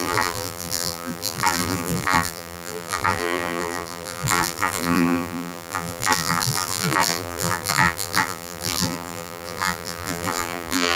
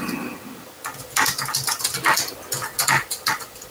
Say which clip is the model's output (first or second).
first